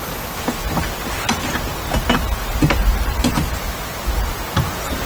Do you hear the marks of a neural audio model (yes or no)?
no